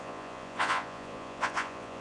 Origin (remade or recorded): remade